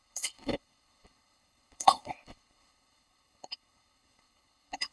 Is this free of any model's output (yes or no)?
no